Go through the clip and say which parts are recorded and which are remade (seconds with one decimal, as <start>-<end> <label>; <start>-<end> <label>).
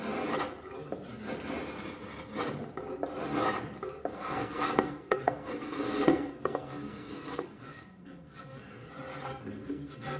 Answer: 0.0-4.1 recorded; 4.1-8.9 remade; 8.9-9.3 recorded; 9.3-10.2 remade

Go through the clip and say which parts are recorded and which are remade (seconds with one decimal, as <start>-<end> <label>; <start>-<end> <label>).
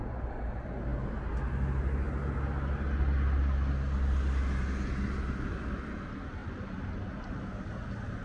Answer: 0.0-8.2 recorded